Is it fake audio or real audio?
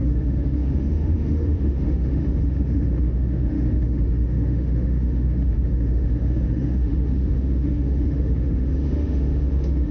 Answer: fake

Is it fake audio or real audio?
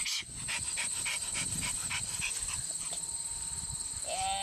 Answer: real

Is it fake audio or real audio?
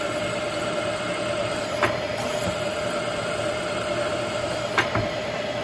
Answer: real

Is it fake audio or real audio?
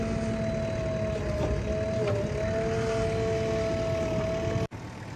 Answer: real